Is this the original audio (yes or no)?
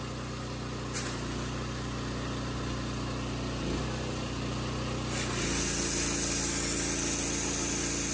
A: yes